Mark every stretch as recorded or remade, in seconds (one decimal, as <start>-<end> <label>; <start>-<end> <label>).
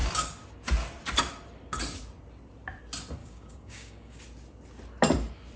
0.0-3.2 recorded; 3.2-4.2 remade; 4.2-5.6 recorded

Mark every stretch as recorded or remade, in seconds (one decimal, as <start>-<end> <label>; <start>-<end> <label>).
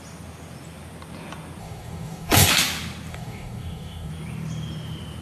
0.0-1.6 recorded; 1.6-2.5 remade; 2.5-3.1 recorded; 3.1-4.1 remade; 4.1-5.2 recorded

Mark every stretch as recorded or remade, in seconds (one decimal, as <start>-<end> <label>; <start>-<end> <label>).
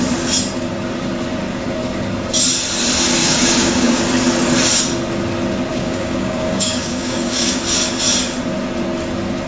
0.0-3.2 recorded; 3.2-4.0 remade; 4.0-5.7 recorded; 5.7-7.6 remade; 7.6-9.5 recorded